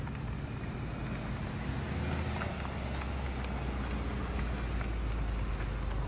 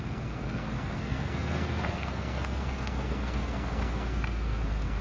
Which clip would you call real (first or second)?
first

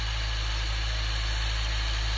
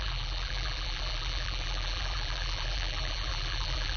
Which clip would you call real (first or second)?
first